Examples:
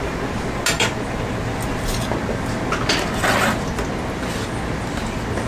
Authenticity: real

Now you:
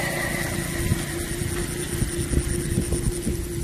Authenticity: real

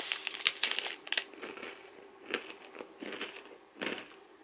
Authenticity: real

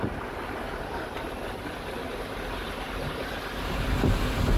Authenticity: real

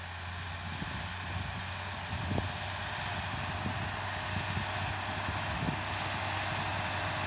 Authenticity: real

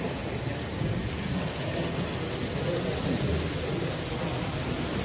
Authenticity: real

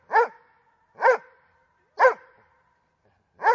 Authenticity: real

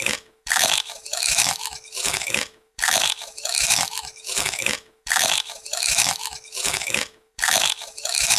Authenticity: fake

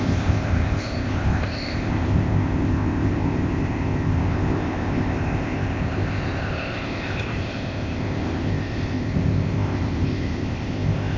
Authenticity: fake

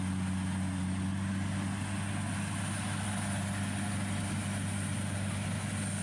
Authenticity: real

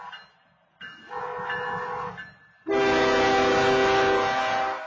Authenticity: real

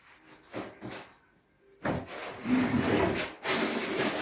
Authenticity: real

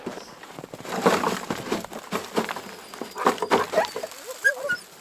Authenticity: real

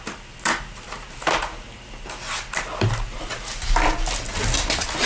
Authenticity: real